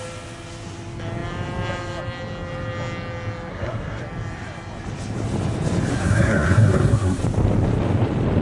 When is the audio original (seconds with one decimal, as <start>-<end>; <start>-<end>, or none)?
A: 0.0-3.5; 4.0-5.9; 7.2-8.4